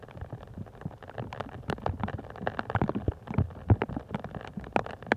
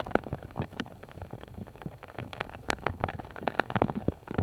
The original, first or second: first